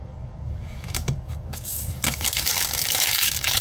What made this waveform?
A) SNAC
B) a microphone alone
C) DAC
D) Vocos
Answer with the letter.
C